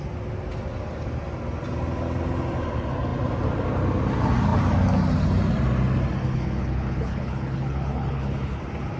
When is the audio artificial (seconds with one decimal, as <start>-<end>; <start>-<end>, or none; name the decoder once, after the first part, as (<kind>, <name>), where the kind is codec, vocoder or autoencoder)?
6.2-8.6 (codec, HILCodec)